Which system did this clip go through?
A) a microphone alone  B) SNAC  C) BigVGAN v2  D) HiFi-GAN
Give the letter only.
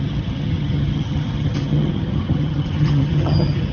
D